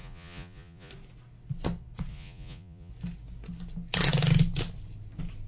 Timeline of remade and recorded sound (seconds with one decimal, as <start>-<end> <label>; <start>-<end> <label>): 0.0-0.9 remade; 0.9-2.1 recorded; 2.1-2.9 remade; 2.9-5.5 recorded